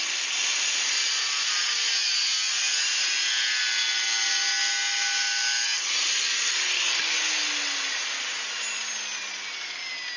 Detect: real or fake real